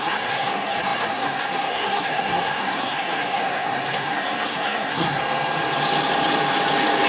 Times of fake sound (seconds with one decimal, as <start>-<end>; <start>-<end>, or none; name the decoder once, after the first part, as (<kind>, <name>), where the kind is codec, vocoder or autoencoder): 0.0-5.2 (codec, SNAC)